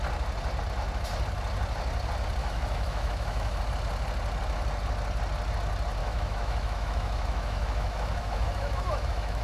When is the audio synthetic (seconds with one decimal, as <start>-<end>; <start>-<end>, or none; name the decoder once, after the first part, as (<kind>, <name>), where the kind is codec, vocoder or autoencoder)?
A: 2.4-3.6 (autoencoder, DAC-VAE); 6.0-9.4